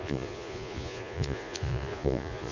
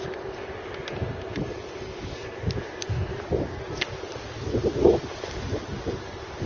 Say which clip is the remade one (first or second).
first